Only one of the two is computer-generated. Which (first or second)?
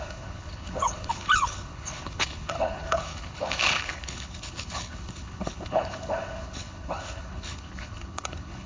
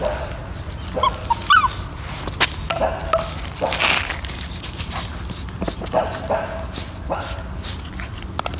first